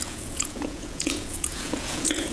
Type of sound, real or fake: fake